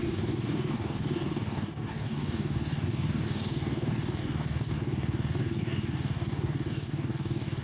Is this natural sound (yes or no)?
no